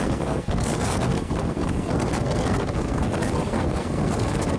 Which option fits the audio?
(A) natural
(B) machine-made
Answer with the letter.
B